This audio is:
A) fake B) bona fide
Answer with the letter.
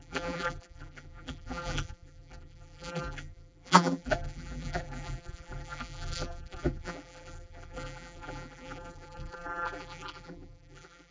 A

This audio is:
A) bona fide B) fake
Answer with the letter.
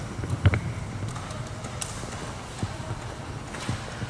A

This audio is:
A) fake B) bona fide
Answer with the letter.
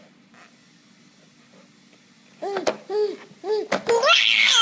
B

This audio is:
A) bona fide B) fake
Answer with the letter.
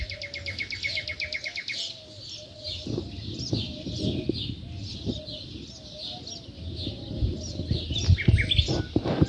A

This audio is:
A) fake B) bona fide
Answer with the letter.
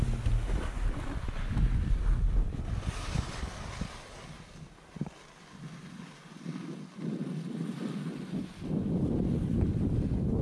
B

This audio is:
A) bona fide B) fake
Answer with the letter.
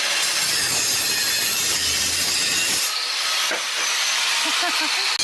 A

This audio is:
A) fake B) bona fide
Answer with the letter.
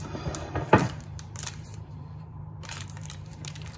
A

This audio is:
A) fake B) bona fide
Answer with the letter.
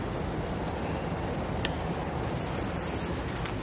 B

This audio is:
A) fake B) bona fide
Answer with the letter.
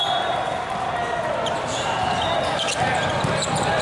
B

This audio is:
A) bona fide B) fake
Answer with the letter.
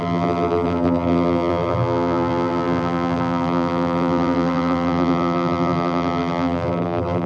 B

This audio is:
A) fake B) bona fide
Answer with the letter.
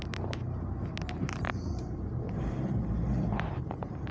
A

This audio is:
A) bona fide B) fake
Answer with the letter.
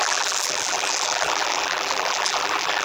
B